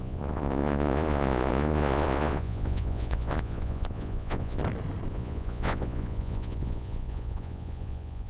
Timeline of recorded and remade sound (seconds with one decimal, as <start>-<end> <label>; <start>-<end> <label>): 0.0-4.6 remade; 4.6-5.1 recorded; 5.1-8.3 remade